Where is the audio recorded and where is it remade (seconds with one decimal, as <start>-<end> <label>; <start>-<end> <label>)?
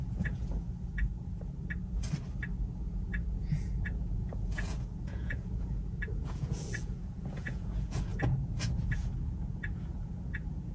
0.0-0.9 remade; 0.9-2.6 recorded; 2.6-10.7 remade